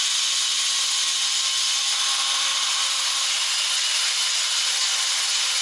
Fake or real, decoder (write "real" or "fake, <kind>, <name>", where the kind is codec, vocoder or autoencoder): real